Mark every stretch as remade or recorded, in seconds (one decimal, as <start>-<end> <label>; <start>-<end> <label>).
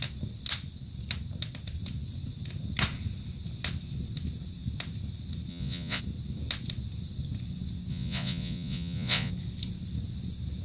0.0-5.5 recorded; 5.5-6.0 remade; 6.0-7.9 recorded; 7.9-9.3 remade; 9.3-10.6 recorded